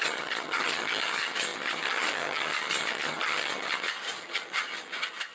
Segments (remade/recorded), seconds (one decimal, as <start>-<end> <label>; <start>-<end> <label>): 0.0-5.3 remade